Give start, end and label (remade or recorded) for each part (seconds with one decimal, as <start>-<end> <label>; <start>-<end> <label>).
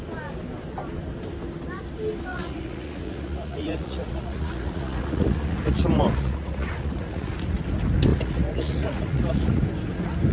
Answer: 0.0-2.3 recorded; 2.3-7.3 remade; 7.3-8.1 recorded; 8.1-9.6 remade; 9.6-10.3 recorded